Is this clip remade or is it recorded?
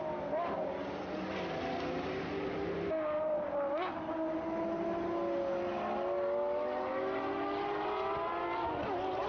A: recorded